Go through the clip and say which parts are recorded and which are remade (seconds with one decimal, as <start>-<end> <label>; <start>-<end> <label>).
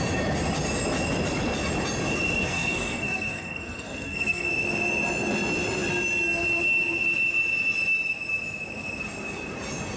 0.0-2.4 recorded; 2.4-4.5 remade; 4.5-10.0 recorded